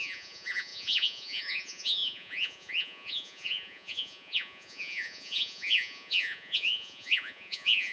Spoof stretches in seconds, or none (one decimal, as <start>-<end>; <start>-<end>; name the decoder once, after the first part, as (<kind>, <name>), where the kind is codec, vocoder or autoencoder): 0.0-7.9 (vocoder, Vocos)